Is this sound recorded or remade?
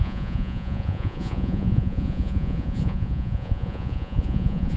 remade